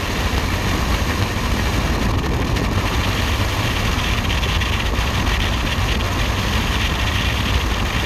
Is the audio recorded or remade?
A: recorded